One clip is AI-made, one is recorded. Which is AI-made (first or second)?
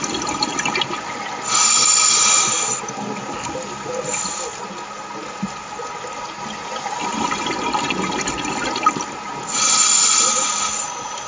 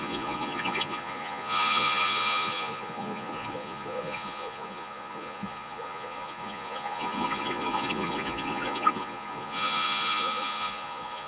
second